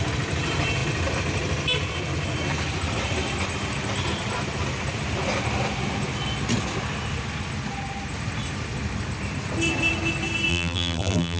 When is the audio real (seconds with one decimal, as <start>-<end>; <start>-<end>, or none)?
0.0-10.5